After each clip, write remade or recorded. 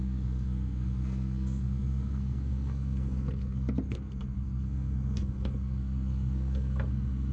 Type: remade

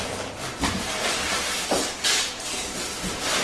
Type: recorded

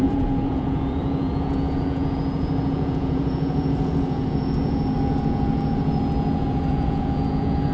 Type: remade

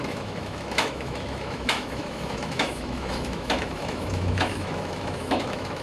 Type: remade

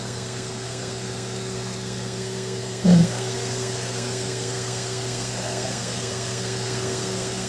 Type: remade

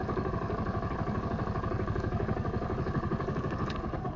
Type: remade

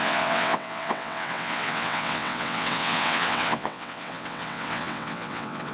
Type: remade